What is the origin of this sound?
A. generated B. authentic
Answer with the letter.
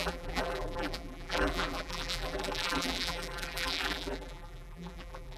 A